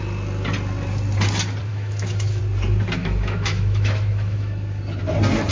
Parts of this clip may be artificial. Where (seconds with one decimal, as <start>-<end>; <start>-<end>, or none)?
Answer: 1.7-2.4; 3.0-4.8

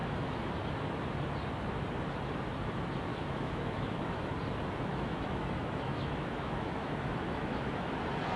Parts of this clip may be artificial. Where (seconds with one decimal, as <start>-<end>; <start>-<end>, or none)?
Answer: 0.0-0.5; 3.1-4.3; 4.9-7.9

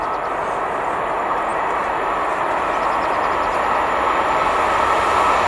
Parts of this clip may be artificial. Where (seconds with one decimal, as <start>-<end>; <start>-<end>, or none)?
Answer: none

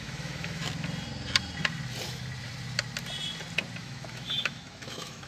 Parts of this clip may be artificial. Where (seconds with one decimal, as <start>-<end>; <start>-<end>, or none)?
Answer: 0.0-0.6; 3.8-5.3

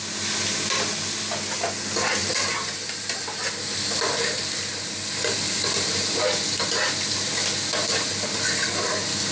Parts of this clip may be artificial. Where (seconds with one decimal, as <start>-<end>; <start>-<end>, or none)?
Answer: none

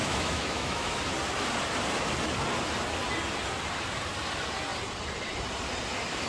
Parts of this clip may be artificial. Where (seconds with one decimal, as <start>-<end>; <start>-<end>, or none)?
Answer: 0.0-1.0

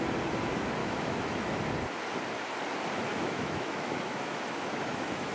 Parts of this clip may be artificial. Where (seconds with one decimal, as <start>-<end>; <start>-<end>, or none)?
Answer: 0.8-1.6; 3.1-5.3

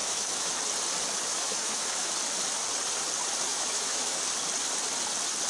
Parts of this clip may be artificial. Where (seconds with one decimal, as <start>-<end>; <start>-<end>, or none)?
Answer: 0.0-0.6; 1.3-2.1; 3.5-4.2